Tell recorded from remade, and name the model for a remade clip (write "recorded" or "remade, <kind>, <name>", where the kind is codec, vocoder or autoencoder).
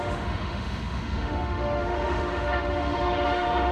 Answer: remade, autoencoder, DAC-VAE